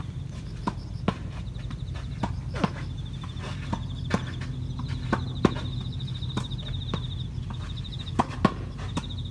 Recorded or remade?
recorded